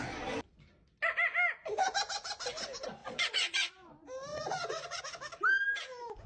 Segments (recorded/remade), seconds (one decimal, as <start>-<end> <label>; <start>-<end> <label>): 0.0-3.0 recorded; 3.0-3.7 remade; 3.7-4.3 recorded; 4.3-5.0 remade; 5.0-6.3 recorded